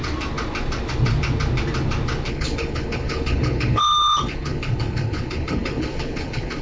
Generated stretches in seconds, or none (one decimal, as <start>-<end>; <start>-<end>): 2.3-6.6